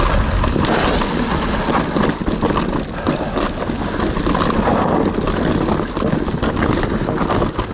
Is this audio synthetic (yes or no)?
no